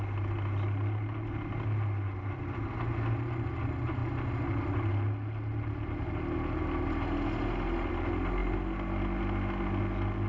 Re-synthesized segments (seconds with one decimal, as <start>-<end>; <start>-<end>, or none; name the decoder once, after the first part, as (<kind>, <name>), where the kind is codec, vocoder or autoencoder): none